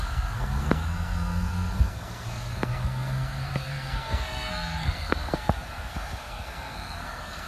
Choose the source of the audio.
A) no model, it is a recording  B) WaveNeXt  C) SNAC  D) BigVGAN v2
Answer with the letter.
C